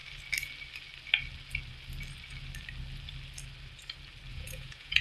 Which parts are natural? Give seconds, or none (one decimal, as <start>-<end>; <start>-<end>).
0.0-4.3